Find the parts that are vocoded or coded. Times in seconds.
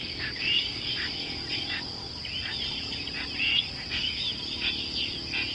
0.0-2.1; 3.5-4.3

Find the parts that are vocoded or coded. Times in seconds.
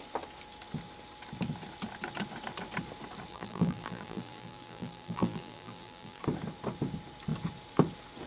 3.3-6.2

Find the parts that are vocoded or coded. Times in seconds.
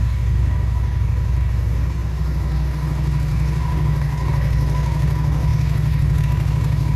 0.0-7.0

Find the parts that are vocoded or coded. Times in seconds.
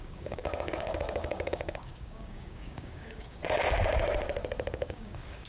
0.0-3.4; 4.7-5.5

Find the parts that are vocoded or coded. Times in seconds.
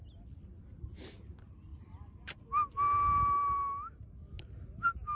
1.7-2.4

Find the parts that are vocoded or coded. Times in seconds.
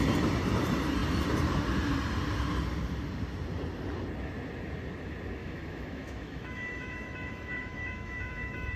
5.4-8.8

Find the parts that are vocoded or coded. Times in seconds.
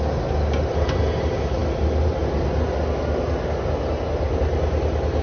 none